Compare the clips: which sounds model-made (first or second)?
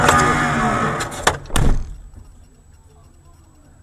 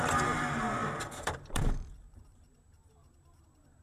second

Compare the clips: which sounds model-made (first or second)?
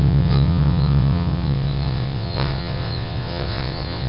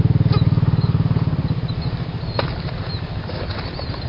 first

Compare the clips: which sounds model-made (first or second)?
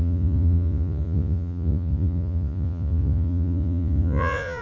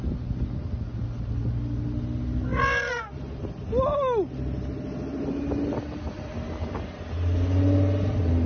first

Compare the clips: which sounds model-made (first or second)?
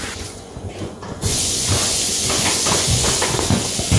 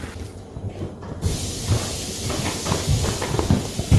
first